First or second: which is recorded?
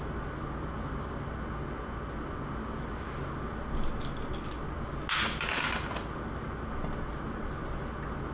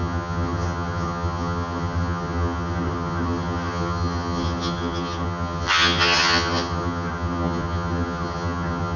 first